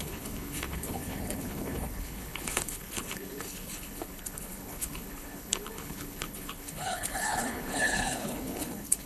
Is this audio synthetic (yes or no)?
yes